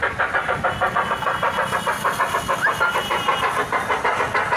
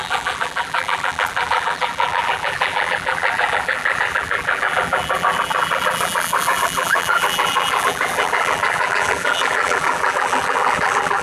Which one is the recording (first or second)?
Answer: first